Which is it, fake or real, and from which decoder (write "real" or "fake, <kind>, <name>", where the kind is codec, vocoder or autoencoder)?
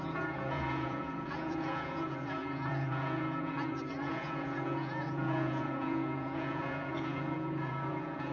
fake, vocoder, Vocos